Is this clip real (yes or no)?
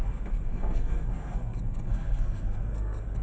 no